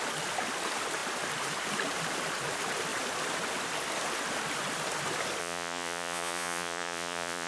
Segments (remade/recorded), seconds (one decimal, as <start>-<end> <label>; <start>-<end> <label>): 0.0-5.4 recorded; 5.4-7.5 remade